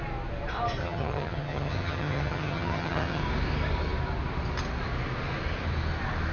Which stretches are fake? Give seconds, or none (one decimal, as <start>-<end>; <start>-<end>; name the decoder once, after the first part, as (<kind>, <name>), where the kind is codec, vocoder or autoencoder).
0.8-3.2 (vocoder, HiFi-GAN)

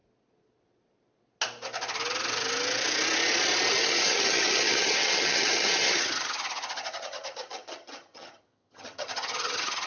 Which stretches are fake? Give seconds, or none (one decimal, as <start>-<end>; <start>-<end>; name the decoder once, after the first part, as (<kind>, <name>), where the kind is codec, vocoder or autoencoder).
3.7-9.9 (vocoder, HiFi-GAN)

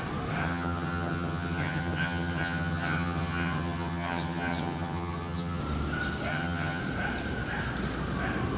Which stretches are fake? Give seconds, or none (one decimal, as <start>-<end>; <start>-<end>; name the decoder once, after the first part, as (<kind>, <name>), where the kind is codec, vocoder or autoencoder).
0.4-5.6 (vocoder, HiFi-GAN); 6.3-6.8

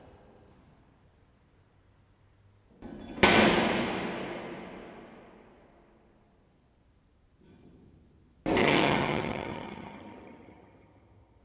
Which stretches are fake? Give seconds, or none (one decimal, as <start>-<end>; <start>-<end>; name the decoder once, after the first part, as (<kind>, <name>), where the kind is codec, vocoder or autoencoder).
8.6-11.4 (vocoder, HiFi-GAN)

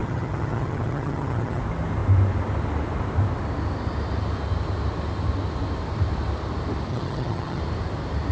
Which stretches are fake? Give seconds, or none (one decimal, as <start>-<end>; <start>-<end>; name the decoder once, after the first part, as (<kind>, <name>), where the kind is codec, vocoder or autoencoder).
0.0-1.6 (vocoder, HiFi-GAN); 6.9-7.6

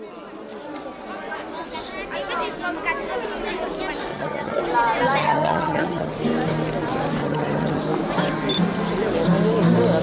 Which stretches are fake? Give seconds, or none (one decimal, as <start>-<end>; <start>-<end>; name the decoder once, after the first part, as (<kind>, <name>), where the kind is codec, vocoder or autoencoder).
4.1-4.6 (vocoder, HiFi-GAN); 5.2-6.1; 7.2-7.8

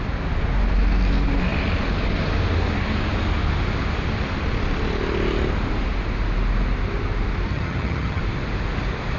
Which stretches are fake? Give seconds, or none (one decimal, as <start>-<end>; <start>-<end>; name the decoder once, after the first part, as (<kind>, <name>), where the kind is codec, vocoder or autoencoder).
7.5-8.2 (vocoder, HiFi-GAN)